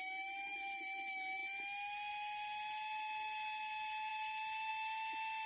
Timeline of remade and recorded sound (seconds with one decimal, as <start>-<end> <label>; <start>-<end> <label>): 0.0-5.5 recorded